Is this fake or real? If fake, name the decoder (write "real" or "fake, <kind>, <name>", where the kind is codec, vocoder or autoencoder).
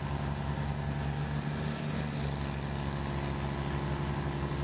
real